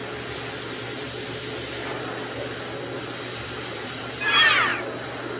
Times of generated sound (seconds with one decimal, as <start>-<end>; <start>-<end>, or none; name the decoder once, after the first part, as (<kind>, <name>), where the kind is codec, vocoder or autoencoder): 3.2-4.7 (vocoder, BigVGAN v2)